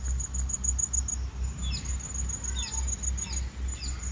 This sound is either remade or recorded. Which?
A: recorded